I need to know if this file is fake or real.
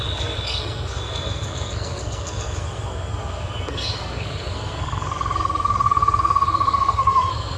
fake